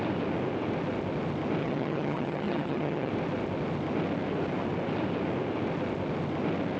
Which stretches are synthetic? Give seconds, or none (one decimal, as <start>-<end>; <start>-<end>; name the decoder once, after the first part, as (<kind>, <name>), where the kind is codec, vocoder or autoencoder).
1.6-3.1 (vocoder, HiFi-GAN)